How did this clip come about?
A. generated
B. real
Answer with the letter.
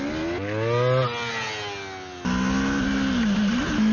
B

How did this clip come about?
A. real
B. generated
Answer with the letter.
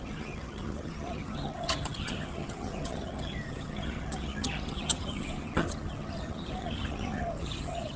B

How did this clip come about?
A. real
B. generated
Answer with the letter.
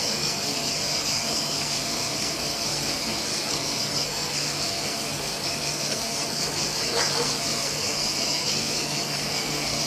B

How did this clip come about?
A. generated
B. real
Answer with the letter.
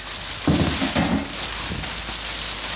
B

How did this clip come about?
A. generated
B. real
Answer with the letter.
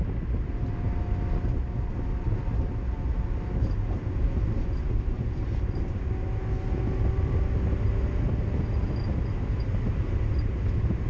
B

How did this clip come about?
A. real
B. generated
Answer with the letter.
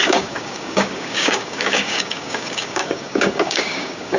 B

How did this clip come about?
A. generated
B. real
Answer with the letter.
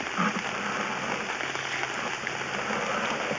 B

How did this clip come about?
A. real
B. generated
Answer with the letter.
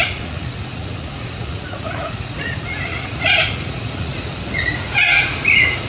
B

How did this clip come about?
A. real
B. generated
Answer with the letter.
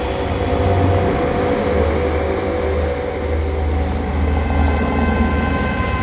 A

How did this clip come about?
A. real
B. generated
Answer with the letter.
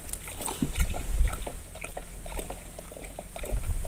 A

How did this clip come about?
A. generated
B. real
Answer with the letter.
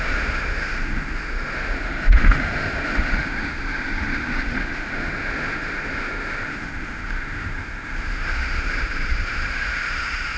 A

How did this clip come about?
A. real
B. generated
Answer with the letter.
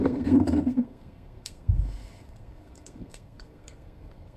B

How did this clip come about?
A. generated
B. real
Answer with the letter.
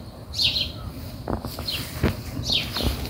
A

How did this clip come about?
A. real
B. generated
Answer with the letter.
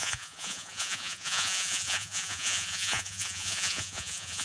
B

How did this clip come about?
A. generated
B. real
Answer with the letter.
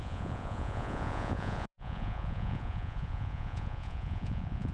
A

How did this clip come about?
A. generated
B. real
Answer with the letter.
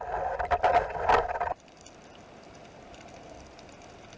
B